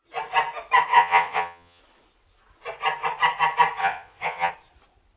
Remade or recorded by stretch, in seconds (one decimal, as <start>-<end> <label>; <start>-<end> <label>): 0.0-0.9 recorded; 0.9-1.8 remade; 1.8-3.8 recorded; 3.8-4.5 remade; 4.5-5.2 recorded